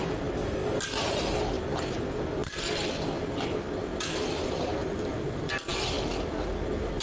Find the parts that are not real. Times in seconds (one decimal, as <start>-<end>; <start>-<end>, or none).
none